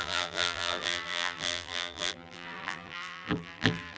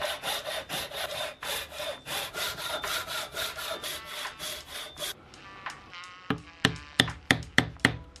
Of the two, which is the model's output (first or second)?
first